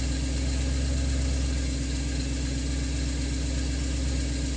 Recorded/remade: recorded